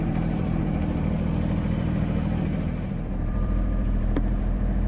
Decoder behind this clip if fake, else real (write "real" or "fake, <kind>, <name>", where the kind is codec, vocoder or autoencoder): fake, vocoder, BigVGAN v2